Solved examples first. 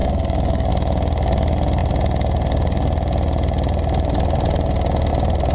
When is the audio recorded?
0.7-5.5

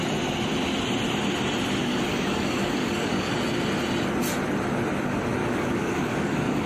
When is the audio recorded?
0.0-1.8; 3.3-5.4

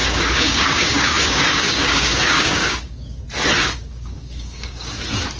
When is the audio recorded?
3.2-3.6; 5.0-5.4

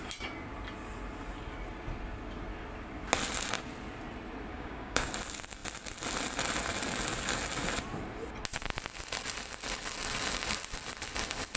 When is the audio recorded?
0.0-4.5; 5.1-11.6

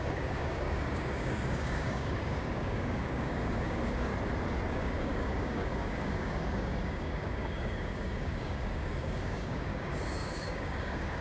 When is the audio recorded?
4.1-4.7

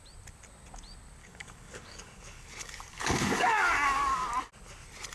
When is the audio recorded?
0.0-1.2; 4.3-5.1